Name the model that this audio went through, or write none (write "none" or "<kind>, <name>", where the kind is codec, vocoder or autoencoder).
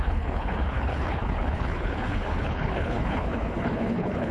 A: codec, HILCodec